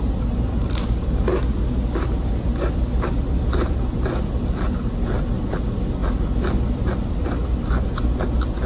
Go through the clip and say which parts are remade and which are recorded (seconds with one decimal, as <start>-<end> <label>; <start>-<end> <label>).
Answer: 0.0-8.7 recorded